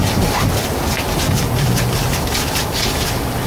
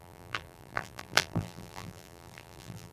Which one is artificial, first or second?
second